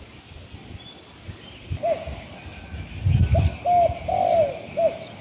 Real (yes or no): yes